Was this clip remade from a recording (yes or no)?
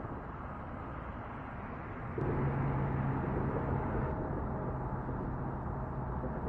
no